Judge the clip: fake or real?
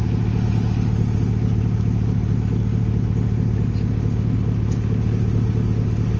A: real